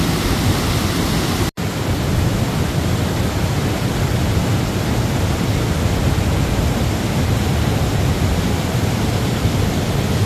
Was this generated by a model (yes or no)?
no